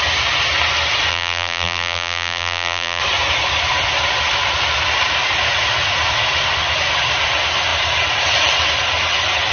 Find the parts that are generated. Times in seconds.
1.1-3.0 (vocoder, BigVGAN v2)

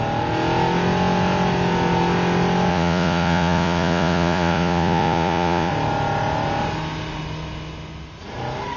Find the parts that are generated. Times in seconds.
2.7-5.7 (vocoder, Vocos)

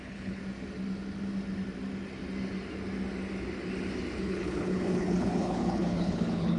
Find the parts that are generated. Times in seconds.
0.0-0.4 (codec, HILCodec); 4.2-6.6

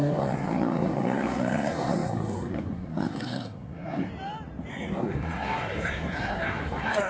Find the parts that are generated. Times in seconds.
0.0-4.1 (codec, SNAC); 4.7-7.1

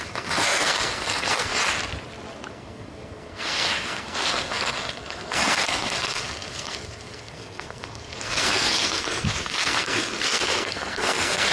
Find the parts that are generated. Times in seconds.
0.0-1.6 (codec, SNAC); 2.5-11.5

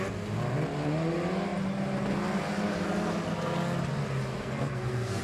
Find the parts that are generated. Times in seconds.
4.3-5.2 (codec, SNAC)

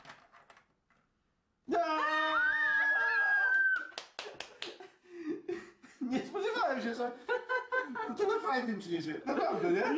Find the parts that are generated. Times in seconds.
6.9-9.2 (codec, SNAC)

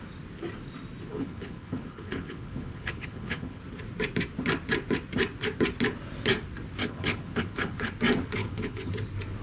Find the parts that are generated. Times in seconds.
1.1-3.6 (codec, HILCodec); 6.8-7.9; 8.4-8.9